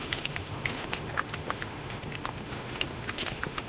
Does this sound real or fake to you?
fake